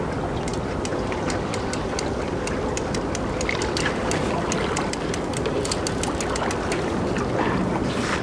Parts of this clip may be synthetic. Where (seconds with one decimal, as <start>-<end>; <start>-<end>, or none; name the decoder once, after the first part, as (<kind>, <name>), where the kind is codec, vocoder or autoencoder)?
none